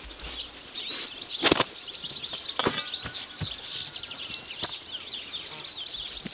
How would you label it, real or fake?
real